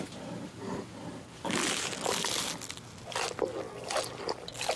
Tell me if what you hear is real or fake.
real